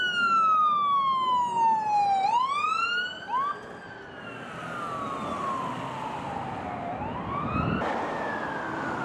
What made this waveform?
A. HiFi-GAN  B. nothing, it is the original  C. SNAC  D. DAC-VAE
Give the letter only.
B